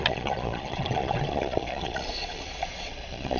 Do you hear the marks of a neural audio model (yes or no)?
yes